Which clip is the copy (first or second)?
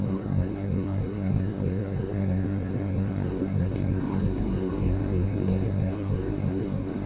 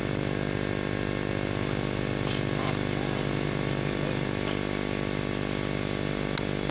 first